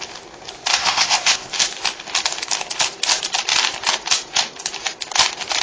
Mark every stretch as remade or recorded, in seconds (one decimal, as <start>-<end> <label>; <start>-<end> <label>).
0.0-0.8 recorded; 0.8-1.5 remade; 1.5-5.6 recorded